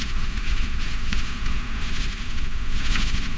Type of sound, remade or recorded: remade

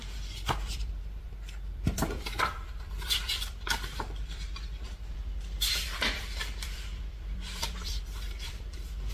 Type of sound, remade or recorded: remade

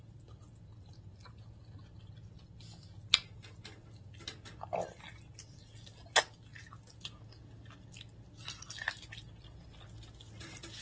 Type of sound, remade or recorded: recorded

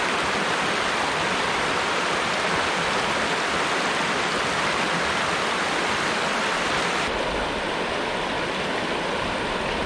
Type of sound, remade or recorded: recorded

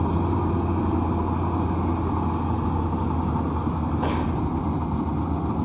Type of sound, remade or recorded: recorded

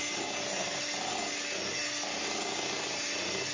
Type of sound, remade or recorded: recorded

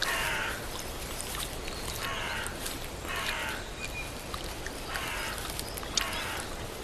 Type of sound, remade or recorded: recorded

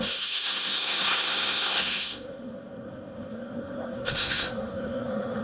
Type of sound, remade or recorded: remade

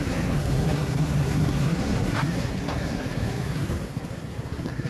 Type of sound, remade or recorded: remade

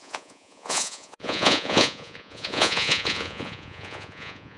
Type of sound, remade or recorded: remade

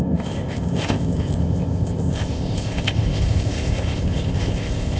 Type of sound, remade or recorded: remade